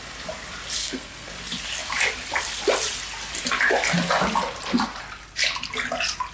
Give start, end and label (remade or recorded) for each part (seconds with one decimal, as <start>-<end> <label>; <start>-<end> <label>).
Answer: 0.0-0.8 recorded; 0.8-1.3 remade; 1.3-6.3 recorded